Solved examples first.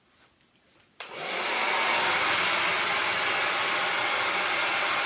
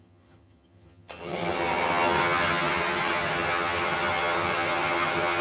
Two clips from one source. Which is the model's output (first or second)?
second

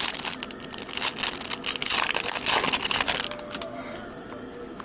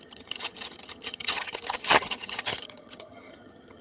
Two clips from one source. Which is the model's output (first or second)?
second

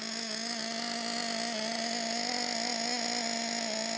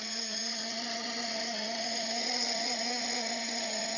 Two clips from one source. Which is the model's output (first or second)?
second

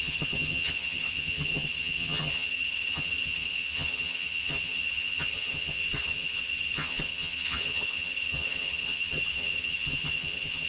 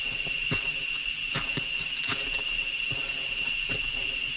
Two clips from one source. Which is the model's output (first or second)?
first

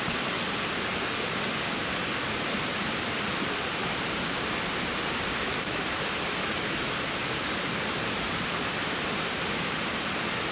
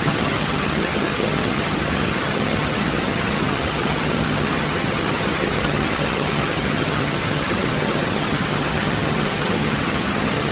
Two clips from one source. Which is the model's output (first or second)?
second